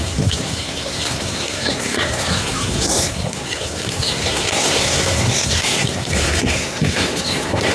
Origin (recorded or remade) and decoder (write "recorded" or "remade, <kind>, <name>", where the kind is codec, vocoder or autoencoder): remade, codec, SNAC